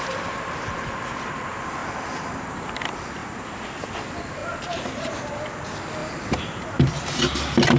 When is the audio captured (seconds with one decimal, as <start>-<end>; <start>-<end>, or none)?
0.0-1.8; 2.7-3.2; 3.7-4.4; 5.1-6.0; 6.9-7.8

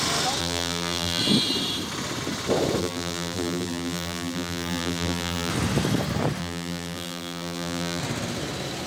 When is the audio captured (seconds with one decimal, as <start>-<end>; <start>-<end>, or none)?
0.0-0.4; 1.2-2.8; 5.5-6.4; 8.0-8.9

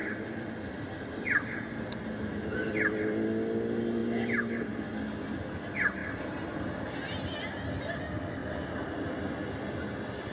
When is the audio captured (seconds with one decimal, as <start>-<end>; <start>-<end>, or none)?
0.0-4.0; 4.7-6.0; 6.6-8.4; 9.8-10.3

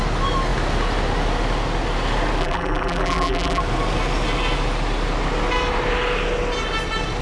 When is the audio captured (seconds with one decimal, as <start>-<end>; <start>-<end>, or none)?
0.0-2.4; 3.6-7.2

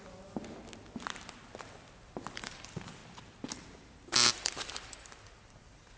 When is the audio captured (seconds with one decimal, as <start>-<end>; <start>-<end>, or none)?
0.0-2.3; 3.0-4.3

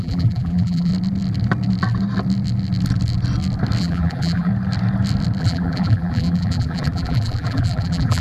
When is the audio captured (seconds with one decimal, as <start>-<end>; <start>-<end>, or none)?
0.9-3.8; 4.5-5.4